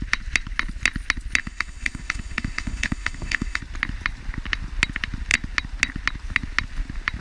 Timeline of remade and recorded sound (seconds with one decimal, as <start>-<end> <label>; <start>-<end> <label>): 0.0-1.4 recorded; 1.4-3.6 remade; 3.6-7.2 recorded